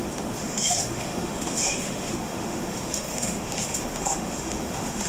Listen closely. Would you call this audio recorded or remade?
remade